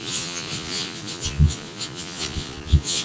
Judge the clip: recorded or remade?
remade